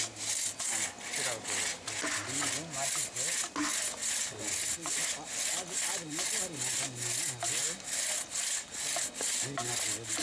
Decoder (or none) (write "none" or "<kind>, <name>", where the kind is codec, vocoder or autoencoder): none